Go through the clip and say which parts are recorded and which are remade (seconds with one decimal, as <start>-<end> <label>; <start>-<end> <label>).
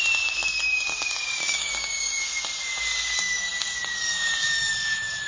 0.0-0.7 recorded; 0.7-2.2 remade; 2.2-3.6 recorded; 3.6-4.7 remade; 4.7-5.3 recorded